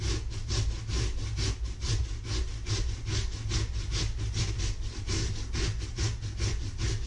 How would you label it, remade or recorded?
recorded